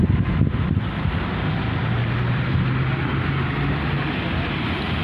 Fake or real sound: real